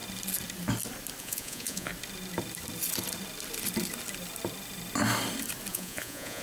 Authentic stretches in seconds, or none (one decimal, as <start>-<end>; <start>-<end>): 0.0-1.2; 1.9-5.7